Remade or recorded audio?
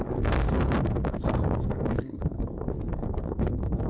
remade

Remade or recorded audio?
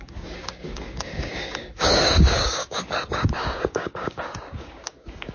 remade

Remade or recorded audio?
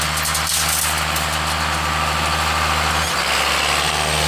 recorded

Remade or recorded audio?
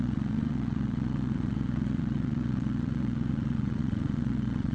remade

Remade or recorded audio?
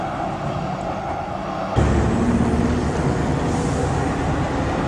recorded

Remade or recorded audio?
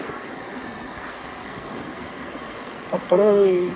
remade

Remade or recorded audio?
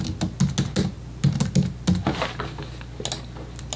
recorded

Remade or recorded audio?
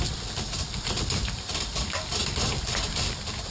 recorded